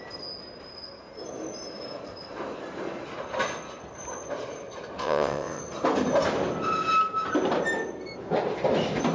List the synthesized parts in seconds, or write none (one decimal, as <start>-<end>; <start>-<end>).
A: 5.0-5.6